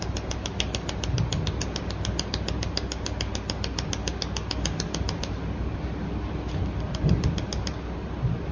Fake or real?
real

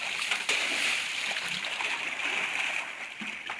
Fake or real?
real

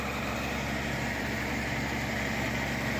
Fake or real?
fake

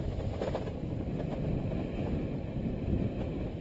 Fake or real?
fake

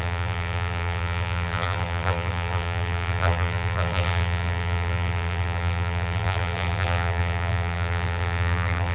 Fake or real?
fake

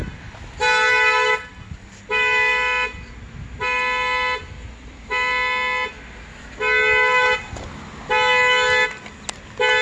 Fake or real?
real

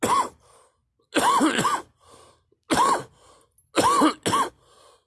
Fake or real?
real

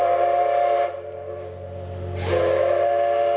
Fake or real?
real